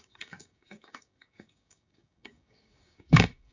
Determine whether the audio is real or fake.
fake